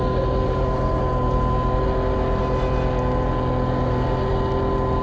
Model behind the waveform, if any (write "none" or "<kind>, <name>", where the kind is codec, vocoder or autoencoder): none